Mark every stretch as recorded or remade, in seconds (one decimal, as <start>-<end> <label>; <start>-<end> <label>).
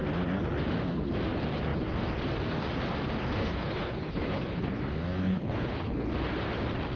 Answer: 0.0-3.4 recorded; 3.4-4.8 remade; 4.8-5.2 recorded; 5.2-6.1 remade; 6.1-7.0 recorded